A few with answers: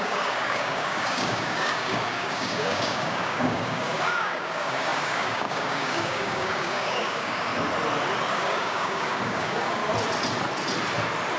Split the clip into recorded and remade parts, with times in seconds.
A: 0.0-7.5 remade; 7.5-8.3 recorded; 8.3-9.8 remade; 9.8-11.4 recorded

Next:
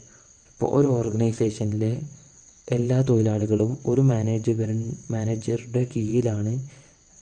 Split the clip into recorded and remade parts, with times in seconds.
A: 0.0-7.2 remade

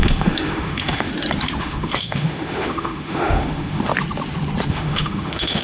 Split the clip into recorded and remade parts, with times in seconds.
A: 0.0-1.1 remade; 1.1-1.6 recorded; 1.6-3.9 remade; 3.9-4.7 recorded; 4.7-5.6 remade

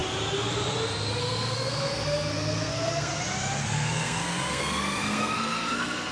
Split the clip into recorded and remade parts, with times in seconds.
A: 0.0-1.2 recorded; 1.2-3.1 remade; 3.1-3.6 recorded; 3.6-6.1 remade

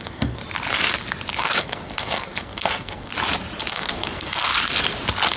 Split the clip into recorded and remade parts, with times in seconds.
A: 0.0-0.4 remade; 0.4-1.4 recorded; 1.4-3.1 remade; 3.1-3.7 recorded; 3.7-4.5 remade; 4.5-5.4 recorded